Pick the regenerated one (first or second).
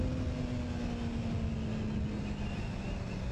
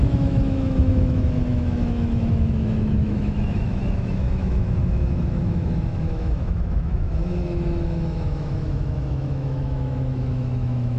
second